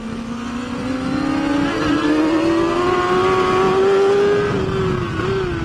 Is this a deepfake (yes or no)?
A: no